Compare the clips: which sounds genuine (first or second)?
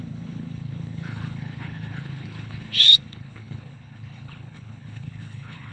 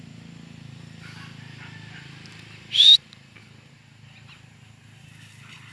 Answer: second